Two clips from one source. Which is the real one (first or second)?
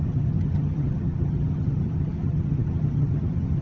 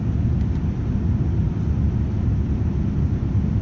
second